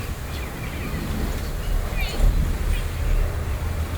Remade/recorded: recorded